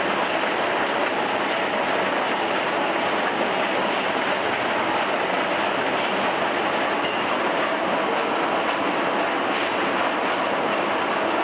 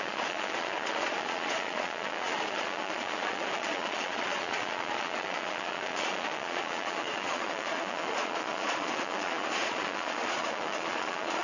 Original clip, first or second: first